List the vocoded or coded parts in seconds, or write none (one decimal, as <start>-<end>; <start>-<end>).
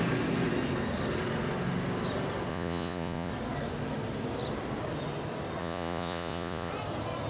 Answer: 2.5-3.3; 5.6-6.7